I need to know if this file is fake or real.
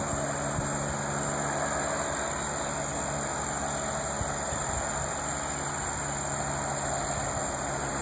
real